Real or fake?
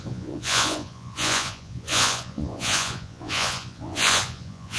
fake